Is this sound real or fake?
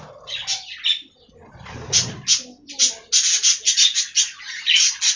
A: real